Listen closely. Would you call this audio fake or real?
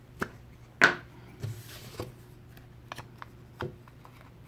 real